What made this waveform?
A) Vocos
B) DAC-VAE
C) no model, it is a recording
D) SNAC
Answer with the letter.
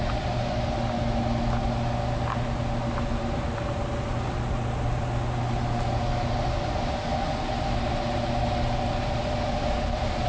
C